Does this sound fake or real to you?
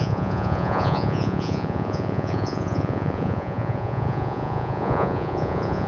fake